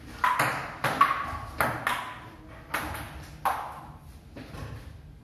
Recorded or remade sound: recorded